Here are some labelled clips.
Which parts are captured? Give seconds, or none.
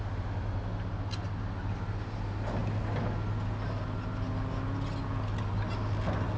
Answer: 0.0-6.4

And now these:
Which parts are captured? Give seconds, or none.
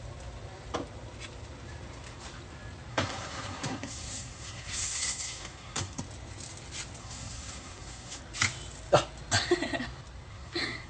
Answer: 0.0-2.9; 6.0-7.0; 8.2-10.3